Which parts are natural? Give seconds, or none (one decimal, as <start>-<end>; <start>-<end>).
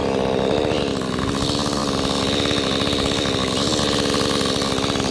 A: 0.0-5.1